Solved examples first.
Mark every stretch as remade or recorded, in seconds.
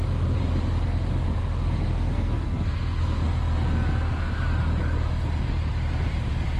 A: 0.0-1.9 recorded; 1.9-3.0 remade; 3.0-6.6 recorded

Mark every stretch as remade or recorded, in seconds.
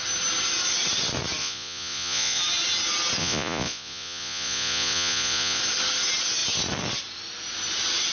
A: 0.0-1.4 recorded; 1.4-2.4 remade; 2.4-3.2 recorded; 3.2-5.6 remade; 5.6-8.1 recorded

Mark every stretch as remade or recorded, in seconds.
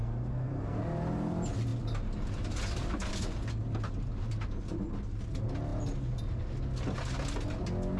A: 0.0-0.8 remade; 0.8-8.0 recorded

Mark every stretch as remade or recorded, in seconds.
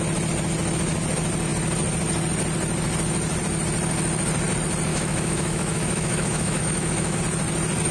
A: 0.0-4.9 recorded; 4.9-7.2 remade; 7.2-7.9 recorded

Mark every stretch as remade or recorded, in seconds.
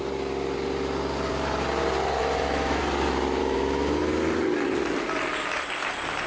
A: 0.0-2.2 recorded; 2.2-2.8 remade; 2.8-3.4 recorded; 3.4-4.1 remade; 4.1-6.3 recorded